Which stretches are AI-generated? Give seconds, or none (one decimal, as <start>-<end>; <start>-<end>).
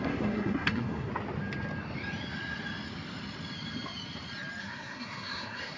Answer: 0.0-1.1; 4.6-5.8